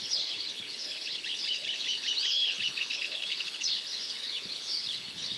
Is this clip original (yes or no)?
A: no